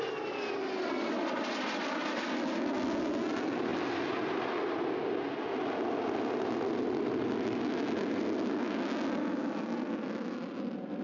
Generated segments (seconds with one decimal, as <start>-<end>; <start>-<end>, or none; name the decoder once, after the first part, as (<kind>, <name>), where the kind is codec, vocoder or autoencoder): none